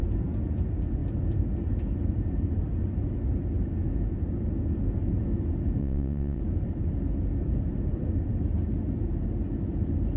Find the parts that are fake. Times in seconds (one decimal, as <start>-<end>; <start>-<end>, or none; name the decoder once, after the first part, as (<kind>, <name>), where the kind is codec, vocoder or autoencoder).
5.8-6.4 (vocoder, Vocos)